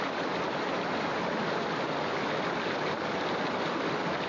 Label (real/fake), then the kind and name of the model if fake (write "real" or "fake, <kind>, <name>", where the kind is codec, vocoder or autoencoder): real